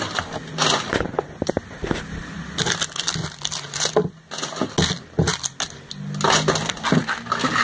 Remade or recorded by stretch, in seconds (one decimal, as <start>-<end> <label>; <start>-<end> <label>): 0.0-7.6 recorded